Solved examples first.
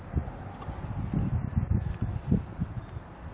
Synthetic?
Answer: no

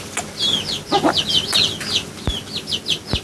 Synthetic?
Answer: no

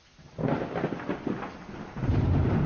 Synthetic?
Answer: no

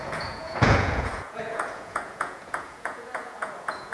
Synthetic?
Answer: yes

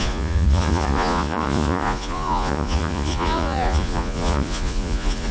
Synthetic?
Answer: yes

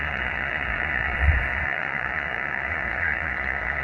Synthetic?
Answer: yes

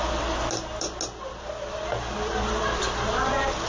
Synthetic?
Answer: no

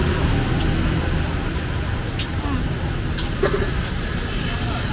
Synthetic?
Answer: no